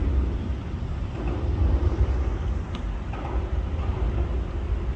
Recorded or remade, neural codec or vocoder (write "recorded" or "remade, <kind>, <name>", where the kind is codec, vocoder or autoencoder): recorded